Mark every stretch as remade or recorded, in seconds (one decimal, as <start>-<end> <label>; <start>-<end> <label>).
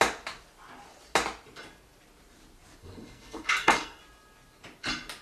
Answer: 0.0-2.8 recorded; 2.8-4.0 remade; 4.0-5.2 recorded